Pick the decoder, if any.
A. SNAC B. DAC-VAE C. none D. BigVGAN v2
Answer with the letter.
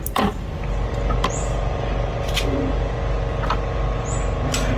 C